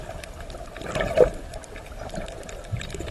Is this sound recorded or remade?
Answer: remade